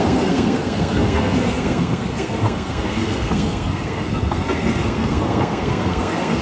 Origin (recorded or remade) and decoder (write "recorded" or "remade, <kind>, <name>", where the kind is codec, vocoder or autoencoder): remade, codec, SNAC